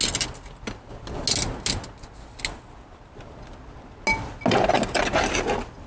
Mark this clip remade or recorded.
recorded